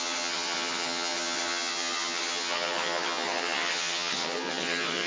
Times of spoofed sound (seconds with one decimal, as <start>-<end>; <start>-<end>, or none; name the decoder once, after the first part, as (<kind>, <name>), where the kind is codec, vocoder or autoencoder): 0.0-5.1 (vocoder, HiFi-GAN)